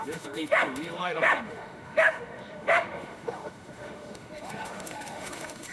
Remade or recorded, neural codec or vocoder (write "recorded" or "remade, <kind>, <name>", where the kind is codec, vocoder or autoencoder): remade, autoencoder, DAC-VAE